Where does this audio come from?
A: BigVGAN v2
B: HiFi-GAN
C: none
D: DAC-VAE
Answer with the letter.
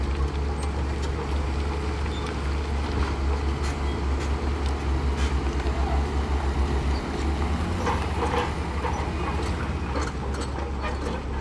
C